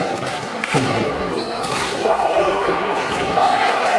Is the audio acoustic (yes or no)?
no